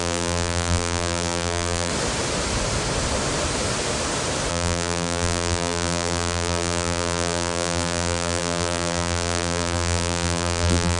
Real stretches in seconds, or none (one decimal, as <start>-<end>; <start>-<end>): 1.9-4.5